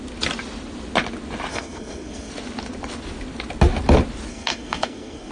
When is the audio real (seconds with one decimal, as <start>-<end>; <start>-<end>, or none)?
0.0-1.5; 2.3-4.3